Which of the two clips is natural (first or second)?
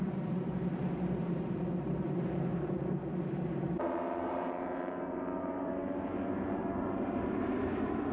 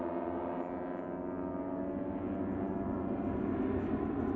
second